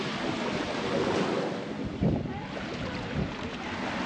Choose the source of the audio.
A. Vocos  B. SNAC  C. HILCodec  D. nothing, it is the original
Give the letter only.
D